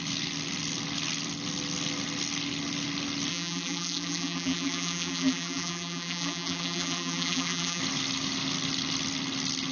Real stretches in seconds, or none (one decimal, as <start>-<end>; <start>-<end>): 0.0-3.3; 7.8-9.7